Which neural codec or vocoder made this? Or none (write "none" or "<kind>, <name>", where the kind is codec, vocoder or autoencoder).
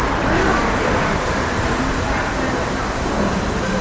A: none